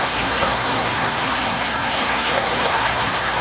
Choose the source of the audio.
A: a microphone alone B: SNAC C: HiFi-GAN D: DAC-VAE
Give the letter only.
B